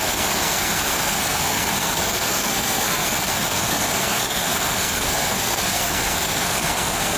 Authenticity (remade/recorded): remade